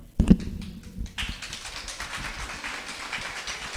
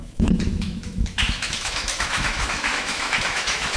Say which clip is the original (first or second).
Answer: first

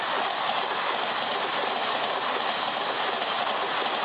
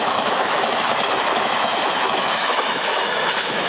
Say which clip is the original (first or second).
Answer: first